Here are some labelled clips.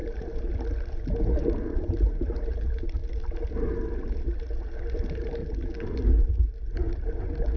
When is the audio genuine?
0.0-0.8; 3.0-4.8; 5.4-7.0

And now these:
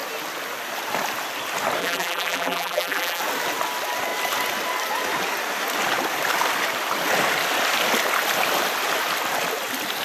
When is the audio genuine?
0.0-1.8; 3.2-10.0

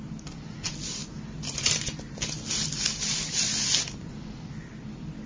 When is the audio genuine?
0.0-5.3